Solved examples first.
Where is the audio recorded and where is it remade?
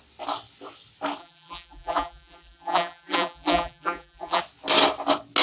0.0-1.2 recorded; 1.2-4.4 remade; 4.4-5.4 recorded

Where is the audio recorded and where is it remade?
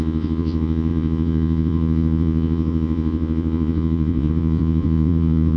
0.0-5.6 remade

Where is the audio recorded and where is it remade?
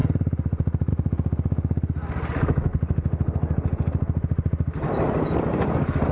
0.0-6.1 recorded